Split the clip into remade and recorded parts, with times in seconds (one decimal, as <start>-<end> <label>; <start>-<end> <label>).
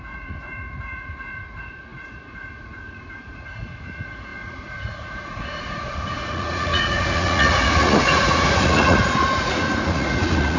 0.0-10.6 remade